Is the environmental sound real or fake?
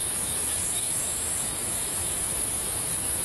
fake